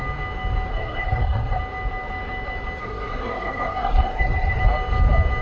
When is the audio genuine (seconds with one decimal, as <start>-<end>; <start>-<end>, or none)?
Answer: 0.0-0.7; 1.6-2.8; 4.6-5.4